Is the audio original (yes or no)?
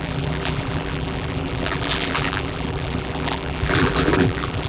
no